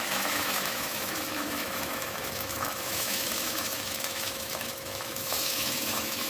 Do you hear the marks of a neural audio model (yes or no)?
yes